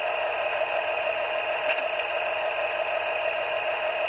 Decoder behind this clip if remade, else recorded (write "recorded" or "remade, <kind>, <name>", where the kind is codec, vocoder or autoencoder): recorded